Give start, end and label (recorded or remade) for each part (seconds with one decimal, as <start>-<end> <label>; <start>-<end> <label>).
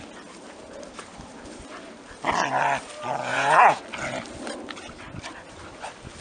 0.0-3.3 recorded; 3.3-3.8 remade; 3.8-6.2 recorded